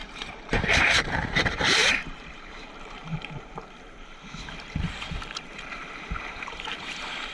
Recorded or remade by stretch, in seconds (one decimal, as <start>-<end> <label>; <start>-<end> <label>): 0.0-7.3 remade